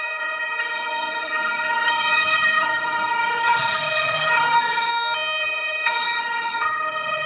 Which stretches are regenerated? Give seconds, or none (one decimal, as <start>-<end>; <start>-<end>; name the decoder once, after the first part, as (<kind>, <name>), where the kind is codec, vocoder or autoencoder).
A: 0.0-4.9 (vocoder, HiFi-GAN); 5.4-7.3